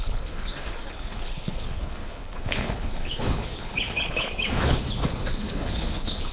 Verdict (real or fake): fake